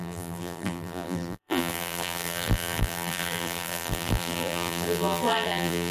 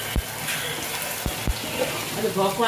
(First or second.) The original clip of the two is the second